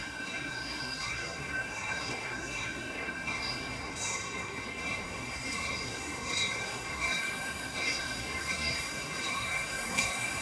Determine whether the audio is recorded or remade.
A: remade